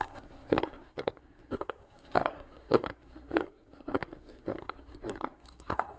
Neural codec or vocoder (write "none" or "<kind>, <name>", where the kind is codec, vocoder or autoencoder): codec, SNAC